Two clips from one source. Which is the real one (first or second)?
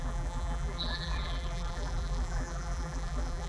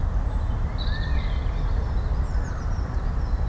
second